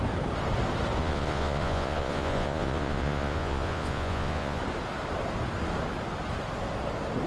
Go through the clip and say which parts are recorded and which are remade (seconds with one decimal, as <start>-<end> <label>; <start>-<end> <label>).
0.0-1.0 recorded; 1.0-4.6 remade; 4.6-7.3 recorded

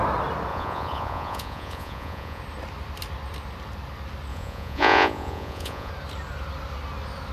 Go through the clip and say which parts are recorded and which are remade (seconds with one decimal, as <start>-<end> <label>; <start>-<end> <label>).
0.0-0.5 recorded; 0.5-2.4 remade; 2.4-4.3 recorded; 4.3-5.9 remade; 5.9-7.3 recorded

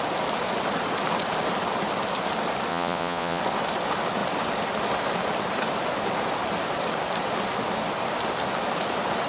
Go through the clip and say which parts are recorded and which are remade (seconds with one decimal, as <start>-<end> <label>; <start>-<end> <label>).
0.0-2.7 recorded; 2.7-3.4 remade; 3.4-9.3 recorded

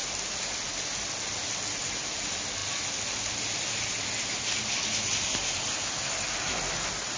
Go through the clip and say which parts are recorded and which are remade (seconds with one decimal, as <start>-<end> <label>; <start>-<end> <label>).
0.0-7.2 recorded

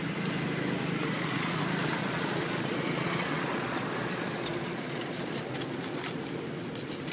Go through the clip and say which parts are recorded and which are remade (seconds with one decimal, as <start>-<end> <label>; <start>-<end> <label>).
0.0-1.0 recorded; 1.0-1.6 remade; 1.6-2.0 recorded; 2.0-5.4 remade; 5.4-7.1 recorded